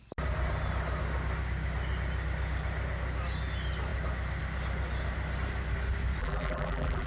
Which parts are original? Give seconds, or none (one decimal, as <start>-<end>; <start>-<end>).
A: 0.0-6.2